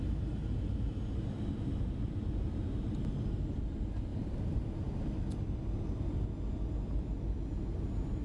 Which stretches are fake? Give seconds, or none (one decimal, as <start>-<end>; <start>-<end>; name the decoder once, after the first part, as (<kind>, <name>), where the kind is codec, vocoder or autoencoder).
0.4-1.0 (vocoder, BigVGAN v2); 4.1-5.2